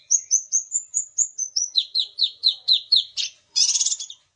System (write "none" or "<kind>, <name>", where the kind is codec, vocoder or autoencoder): vocoder, Vocos